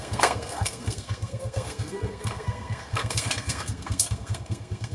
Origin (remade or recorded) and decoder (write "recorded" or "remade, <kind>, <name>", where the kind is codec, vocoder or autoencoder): remade, codec, SNAC